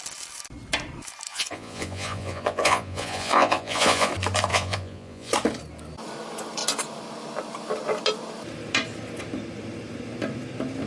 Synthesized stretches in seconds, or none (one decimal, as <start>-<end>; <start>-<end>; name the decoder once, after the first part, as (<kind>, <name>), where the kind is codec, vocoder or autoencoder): 1.3-4.1 (vocoder, Vocos); 4.5-5.3